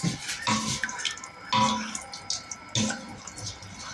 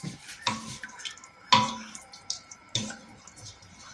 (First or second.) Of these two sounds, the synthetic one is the second